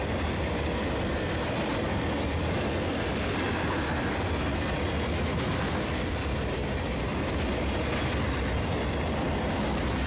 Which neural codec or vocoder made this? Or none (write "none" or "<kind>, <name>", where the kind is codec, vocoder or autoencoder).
none